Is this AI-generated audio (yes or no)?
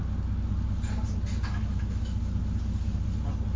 no